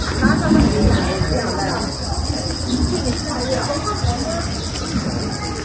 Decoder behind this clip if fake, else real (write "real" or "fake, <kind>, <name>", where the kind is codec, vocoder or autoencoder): real